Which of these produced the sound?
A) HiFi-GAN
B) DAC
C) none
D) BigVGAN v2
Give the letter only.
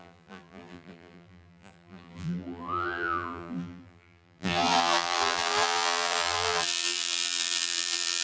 D